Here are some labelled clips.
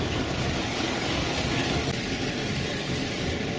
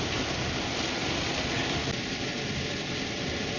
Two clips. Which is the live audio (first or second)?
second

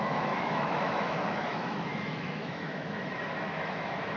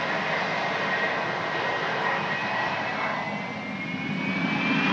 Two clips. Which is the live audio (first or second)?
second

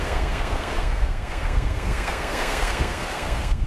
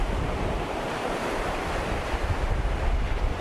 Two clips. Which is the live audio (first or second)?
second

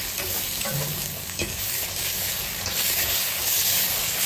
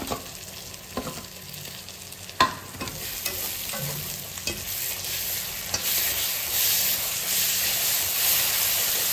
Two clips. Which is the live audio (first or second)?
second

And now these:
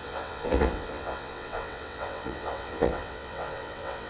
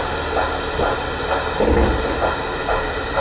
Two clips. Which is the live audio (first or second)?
second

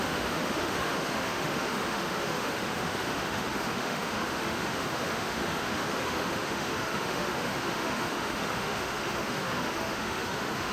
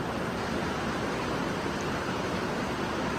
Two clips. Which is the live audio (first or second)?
second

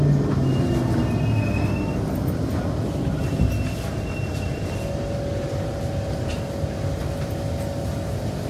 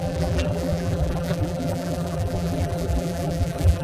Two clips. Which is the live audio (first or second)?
first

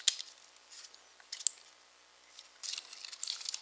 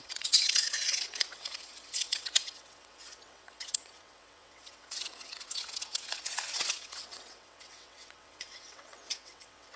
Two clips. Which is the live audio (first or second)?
first